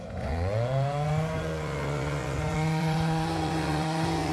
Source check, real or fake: fake